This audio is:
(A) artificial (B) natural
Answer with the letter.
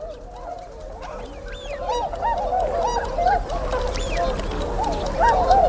B